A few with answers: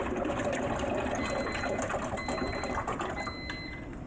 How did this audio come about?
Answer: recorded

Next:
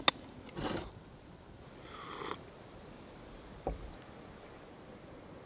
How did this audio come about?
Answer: recorded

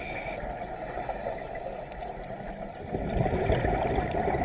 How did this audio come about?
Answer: recorded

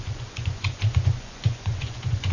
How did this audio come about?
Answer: remade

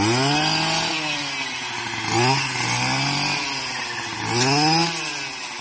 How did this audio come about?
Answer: recorded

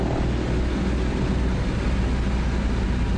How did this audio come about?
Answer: recorded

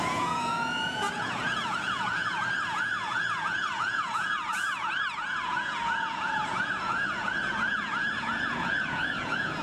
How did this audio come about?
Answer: remade